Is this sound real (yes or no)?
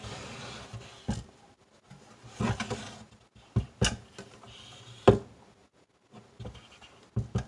yes